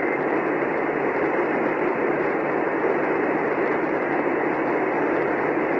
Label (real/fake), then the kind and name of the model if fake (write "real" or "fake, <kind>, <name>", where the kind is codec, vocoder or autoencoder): fake, vocoder, BigVGAN v2